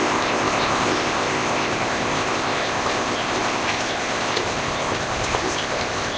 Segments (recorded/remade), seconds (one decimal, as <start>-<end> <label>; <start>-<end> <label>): 0.0-6.2 remade

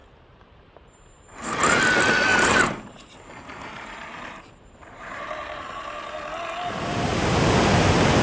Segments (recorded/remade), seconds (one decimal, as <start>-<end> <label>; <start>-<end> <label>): 0.0-1.8 remade; 1.8-2.3 recorded; 2.3-5.7 remade; 5.7-8.2 recorded

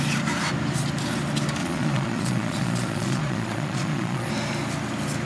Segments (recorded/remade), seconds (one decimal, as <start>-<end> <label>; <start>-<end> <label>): 0.0-1.6 recorded; 1.6-4.3 remade; 4.3-5.3 recorded

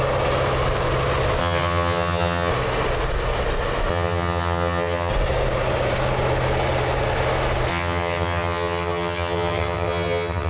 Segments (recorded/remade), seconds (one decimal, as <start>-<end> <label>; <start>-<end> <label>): 0.0-1.4 recorded; 1.4-2.5 remade; 2.5-3.9 recorded; 3.9-5.1 remade; 5.1-7.7 recorded; 7.7-10.5 remade

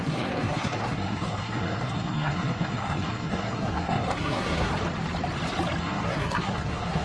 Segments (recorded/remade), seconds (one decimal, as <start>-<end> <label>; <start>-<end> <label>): 0.0-4.7 remade; 4.7-5.8 recorded; 5.8-7.0 remade

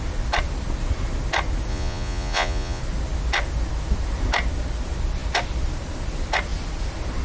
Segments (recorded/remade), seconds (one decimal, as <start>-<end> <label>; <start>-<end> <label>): 0.0-1.7 recorded; 1.7-2.8 remade; 2.8-7.2 recorded